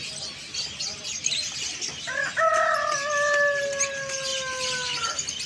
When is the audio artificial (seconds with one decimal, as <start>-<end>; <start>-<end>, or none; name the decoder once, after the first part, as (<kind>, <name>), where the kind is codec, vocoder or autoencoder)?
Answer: none

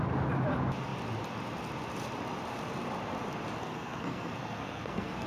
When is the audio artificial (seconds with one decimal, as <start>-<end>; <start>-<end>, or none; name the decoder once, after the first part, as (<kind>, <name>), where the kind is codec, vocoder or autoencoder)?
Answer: 3.6-5.3 (codec, SNAC)

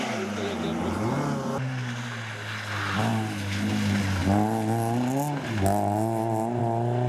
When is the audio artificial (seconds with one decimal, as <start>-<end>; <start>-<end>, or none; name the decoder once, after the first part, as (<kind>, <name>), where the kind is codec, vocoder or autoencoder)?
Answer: none

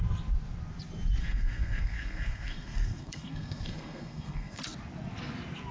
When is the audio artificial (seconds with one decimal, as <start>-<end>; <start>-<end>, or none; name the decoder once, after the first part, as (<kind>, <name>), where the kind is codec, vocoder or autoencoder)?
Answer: 1.2-4.6 (codec, SNAC)

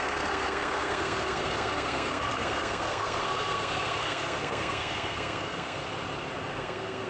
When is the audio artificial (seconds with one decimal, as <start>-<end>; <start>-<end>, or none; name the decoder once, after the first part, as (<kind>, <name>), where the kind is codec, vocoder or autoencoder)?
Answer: 0.0-5.8 (codec, SNAC); 6.5-7.1

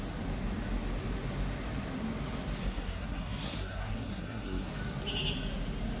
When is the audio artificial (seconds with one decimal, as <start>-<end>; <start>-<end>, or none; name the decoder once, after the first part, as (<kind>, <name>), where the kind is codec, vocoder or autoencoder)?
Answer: 2.6-4.7 (codec, SNAC)

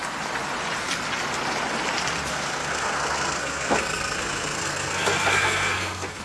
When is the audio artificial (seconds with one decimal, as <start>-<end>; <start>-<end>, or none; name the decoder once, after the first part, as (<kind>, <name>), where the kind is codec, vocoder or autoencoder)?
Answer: 2.3-6.2 (codec, SNAC)